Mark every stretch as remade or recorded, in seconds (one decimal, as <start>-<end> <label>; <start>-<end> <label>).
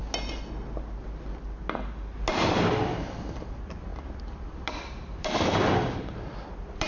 0.0-3.3 recorded; 3.3-3.9 remade; 3.9-4.5 recorded; 4.5-6.9 remade